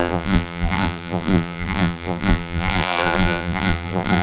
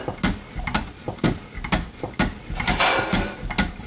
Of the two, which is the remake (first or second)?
first